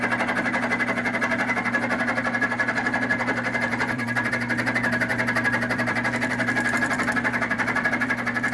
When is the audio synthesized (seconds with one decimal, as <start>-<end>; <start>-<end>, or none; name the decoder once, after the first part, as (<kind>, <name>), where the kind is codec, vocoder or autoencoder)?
3.7-4.3 (vocoder, BigVGAN v2); 5.1-7.9